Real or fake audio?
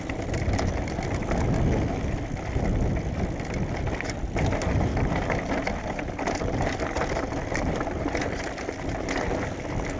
real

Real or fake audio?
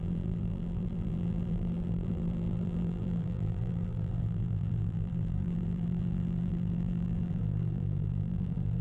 fake